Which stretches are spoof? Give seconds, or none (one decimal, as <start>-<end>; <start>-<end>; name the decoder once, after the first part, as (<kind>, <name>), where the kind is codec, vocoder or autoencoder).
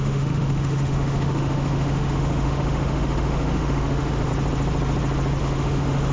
0.0-4.3 (autoencoder, DAC-VAE); 5.4-6.1